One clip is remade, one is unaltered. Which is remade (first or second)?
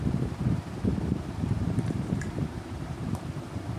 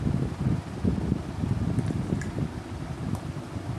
first